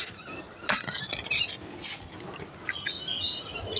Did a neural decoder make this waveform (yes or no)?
no